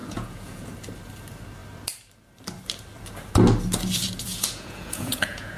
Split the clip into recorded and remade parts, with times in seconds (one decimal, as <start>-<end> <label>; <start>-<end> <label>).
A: 0.0-0.7 remade; 0.7-4.3 recorded; 4.3-5.6 remade